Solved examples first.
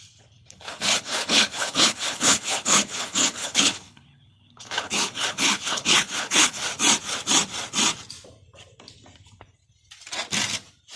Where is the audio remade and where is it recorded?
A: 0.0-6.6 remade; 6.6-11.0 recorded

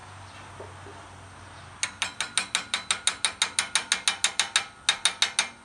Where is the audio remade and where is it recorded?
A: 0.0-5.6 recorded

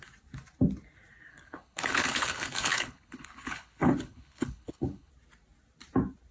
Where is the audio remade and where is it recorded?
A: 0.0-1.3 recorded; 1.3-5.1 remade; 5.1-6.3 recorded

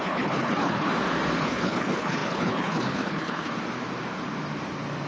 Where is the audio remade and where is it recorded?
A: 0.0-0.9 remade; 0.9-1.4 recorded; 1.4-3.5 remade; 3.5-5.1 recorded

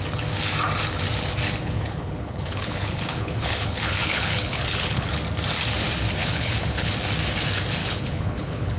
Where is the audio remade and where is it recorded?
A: 0.0-1.6 recorded; 1.6-5.1 remade; 5.1-6.2 recorded; 6.2-6.9 remade; 6.9-7.8 recorded; 7.8-8.8 remade

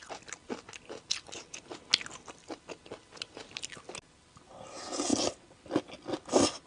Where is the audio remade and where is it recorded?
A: 0.0-6.7 recorded

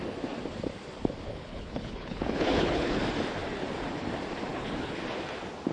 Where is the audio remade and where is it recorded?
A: 0.0-1.3 recorded; 1.3-3.0 remade; 3.0-4.5 recorded; 4.5-5.0 remade; 5.0-5.7 recorded